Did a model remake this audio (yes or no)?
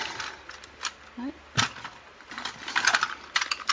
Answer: no